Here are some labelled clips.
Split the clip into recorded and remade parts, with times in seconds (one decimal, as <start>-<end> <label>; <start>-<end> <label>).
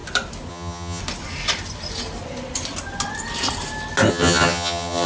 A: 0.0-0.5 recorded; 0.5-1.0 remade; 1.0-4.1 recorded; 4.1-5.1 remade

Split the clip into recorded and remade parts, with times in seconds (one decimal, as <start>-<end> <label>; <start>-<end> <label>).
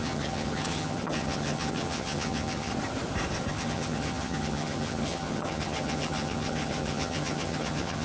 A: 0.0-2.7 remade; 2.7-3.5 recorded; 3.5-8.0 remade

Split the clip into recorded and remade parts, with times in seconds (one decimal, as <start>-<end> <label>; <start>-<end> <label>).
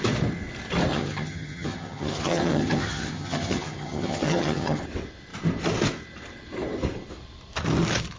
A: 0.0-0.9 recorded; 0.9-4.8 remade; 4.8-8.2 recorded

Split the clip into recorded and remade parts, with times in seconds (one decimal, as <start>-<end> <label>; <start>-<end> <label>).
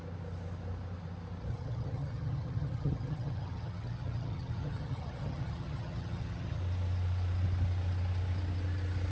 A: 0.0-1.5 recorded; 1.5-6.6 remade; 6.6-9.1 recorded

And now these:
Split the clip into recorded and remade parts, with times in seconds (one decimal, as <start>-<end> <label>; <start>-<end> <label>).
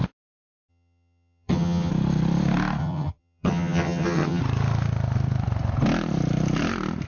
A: 0.0-0.7 recorded; 0.7-1.9 remade; 1.9-2.8 recorded; 2.8-4.4 remade; 4.4-7.1 recorded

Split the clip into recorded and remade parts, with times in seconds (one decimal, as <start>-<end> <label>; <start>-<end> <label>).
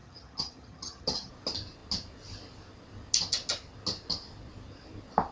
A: 0.0-1.3 remade; 1.3-5.3 recorded